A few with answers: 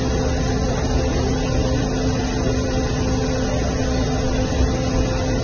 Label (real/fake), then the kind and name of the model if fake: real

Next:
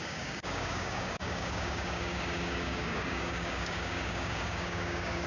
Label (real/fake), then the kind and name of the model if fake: fake, codec, DAC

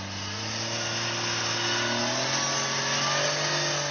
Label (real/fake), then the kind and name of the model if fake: real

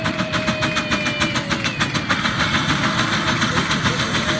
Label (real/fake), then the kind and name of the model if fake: real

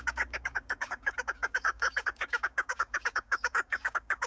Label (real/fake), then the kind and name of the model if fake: fake, codec, DAC